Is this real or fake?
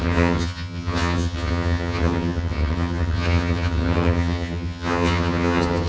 fake